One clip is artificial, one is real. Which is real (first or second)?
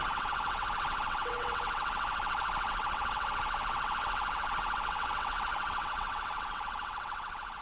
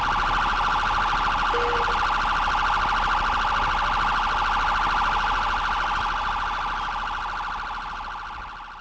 second